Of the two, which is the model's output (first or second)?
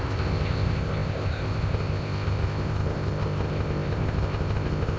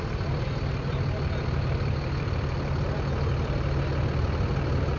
first